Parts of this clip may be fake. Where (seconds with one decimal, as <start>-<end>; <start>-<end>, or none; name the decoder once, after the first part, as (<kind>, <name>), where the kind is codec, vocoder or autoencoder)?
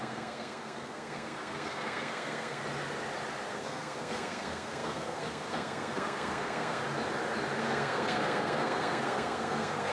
0.0-2.6 (codec, SNAC); 3.5-6.8; 7.6-9.9